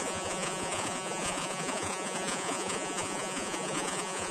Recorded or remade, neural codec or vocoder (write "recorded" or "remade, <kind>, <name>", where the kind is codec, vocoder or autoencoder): remade, vocoder, Vocos